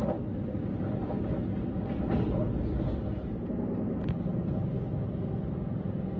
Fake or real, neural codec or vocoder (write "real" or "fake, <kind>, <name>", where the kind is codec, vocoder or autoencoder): real